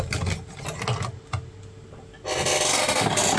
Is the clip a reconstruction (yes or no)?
no